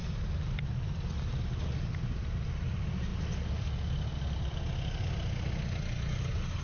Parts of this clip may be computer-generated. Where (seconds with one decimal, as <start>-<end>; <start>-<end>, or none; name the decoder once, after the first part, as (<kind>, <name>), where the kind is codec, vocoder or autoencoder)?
none